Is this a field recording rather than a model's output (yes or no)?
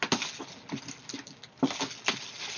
yes